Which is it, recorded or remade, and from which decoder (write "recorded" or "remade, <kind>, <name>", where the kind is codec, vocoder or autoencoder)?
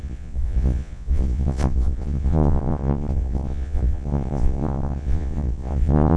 remade, vocoder, Vocos